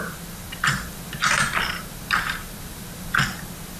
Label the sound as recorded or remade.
recorded